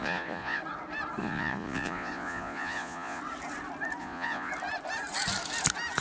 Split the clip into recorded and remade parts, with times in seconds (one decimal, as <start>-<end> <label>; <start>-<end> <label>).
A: 0.0-0.6 remade; 0.6-1.2 recorded; 1.2-3.2 remade; 3.2-4.0 recorded; 4.0-4.5 remade; 4.5-6.0 recorded